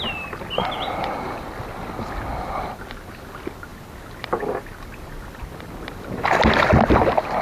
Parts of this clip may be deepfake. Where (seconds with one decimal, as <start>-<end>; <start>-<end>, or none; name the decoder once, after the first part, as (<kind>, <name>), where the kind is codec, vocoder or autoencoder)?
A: none